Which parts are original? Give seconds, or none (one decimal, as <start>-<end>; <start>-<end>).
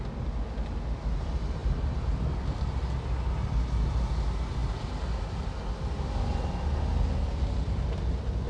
0.0-8.5